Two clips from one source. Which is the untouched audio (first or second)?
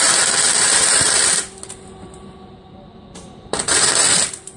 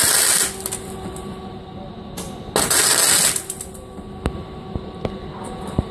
second